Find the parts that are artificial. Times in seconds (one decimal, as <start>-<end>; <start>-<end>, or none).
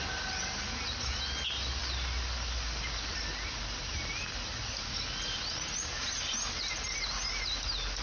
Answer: none